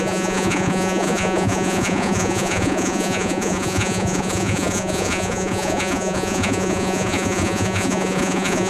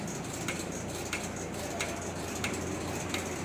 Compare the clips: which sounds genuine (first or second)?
second